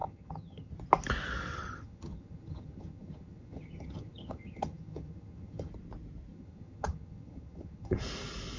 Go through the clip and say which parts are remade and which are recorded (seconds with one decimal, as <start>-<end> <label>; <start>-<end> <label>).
0.0-0.7 remade; 0.7-1.5 recorded; 1.5-5.7 remade; 5.7-6.3 recorded; 6.3-8.0 remade; 8.0-8.6 recorded